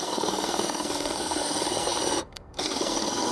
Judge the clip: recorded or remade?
remade